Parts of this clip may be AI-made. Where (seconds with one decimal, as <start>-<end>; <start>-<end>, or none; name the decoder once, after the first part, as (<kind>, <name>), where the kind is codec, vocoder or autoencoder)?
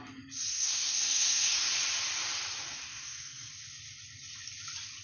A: 0.5-1.7 (codec, SNAC); 2.7-3.5